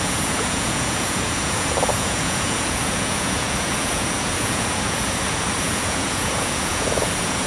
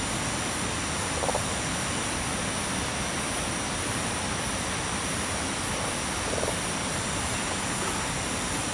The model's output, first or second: first